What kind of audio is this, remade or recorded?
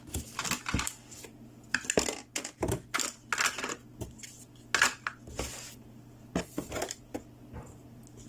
recorded